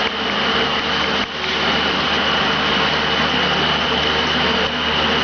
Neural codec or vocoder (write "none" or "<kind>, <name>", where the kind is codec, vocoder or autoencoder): none